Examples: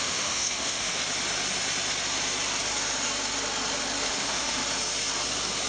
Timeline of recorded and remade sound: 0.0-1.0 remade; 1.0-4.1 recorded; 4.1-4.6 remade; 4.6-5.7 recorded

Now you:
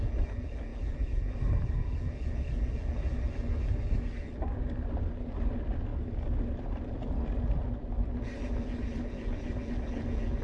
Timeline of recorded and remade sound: 0.0-10.4 recorded

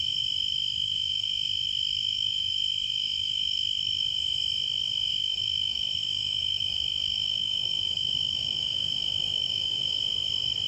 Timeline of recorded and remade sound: 0.0-0.4 recorded; 0.4-4.0 remade; 4.0-5.1 recorded; 5.1-9.9 remade; 9.9-10.7 recorded

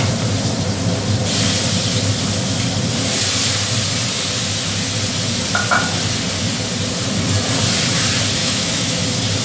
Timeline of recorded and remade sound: 0.0-8.4 recorded; 8.4-9.0 remade; 9.0-9.4 recorded

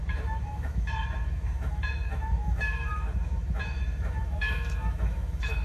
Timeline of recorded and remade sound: 0.0-5.6 remade